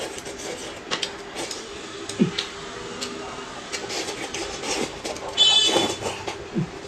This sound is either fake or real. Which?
real